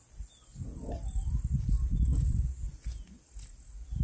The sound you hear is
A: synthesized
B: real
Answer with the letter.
B